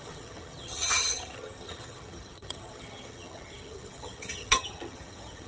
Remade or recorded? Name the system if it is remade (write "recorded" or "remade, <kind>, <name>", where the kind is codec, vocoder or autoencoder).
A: remade, vocoder, HiFi-GAN